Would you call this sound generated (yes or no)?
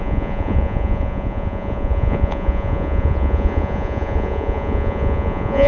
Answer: yes